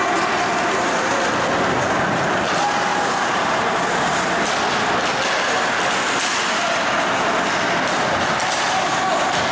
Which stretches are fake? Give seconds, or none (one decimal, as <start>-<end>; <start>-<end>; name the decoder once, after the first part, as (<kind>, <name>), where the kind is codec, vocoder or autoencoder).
2.9-3.5 (vocoder, BigVGAN v2)